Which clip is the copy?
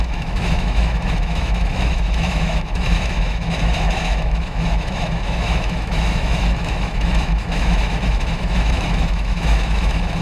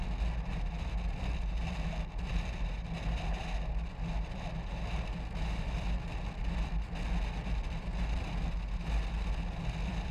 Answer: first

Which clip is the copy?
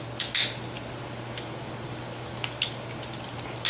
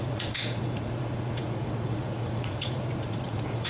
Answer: second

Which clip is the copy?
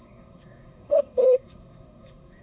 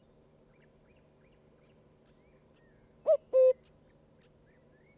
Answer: first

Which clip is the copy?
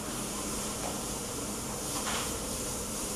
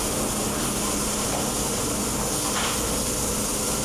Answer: first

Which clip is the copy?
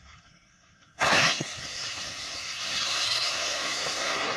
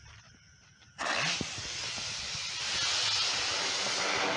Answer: first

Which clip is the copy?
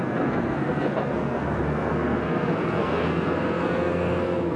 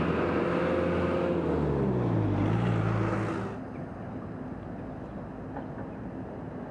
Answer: first